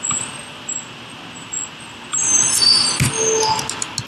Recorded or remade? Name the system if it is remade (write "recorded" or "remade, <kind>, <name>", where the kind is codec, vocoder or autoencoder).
recorded